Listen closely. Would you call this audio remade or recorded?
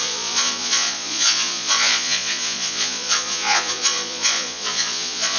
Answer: remade